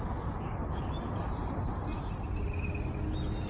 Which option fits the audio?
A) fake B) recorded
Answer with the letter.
B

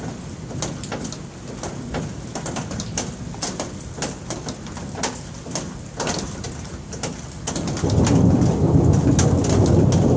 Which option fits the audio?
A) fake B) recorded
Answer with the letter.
B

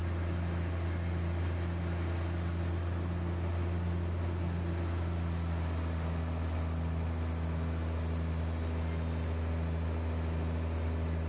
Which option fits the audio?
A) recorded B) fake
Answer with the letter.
A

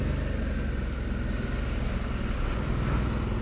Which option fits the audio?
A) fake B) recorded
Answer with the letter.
B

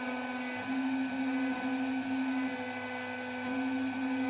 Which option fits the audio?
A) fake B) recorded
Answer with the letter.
B